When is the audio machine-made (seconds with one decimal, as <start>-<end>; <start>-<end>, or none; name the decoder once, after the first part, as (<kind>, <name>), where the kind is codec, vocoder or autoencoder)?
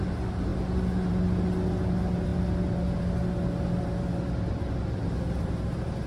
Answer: none